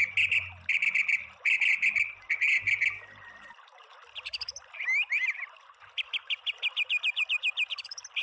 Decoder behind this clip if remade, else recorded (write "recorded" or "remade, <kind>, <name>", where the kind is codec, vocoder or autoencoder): recorded